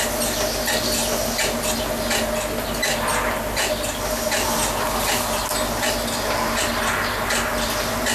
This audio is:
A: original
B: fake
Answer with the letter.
A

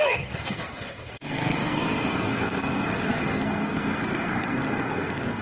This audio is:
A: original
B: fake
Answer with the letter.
B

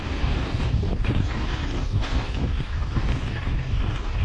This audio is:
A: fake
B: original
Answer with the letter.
A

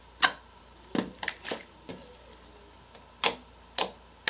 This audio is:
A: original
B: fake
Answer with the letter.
A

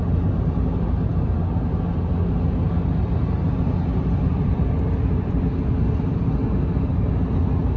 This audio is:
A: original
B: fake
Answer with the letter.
A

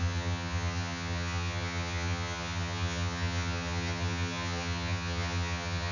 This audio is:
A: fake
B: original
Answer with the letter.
A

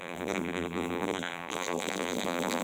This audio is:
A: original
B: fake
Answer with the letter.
B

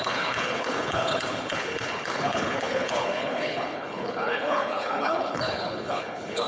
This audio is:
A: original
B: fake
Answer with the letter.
B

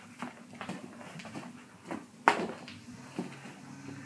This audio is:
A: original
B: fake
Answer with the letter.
A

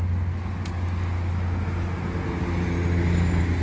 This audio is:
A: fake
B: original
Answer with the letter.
B